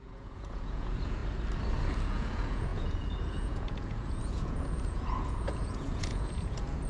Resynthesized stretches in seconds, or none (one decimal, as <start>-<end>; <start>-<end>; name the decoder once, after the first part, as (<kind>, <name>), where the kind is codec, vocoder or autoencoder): 0.0-1.2 (vocoder, Vocos); 1.8-6.9